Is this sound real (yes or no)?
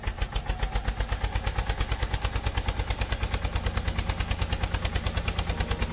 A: yes